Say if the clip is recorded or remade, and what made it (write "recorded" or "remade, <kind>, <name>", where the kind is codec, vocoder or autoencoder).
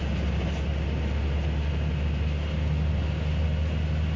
recorded